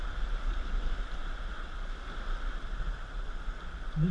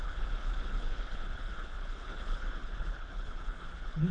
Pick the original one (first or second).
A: first